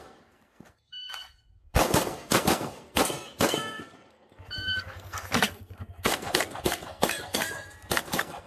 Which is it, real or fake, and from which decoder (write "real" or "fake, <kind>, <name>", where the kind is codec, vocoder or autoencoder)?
fake, codec, SNAC